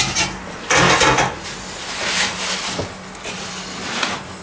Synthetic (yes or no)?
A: no